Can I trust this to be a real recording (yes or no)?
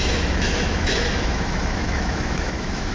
no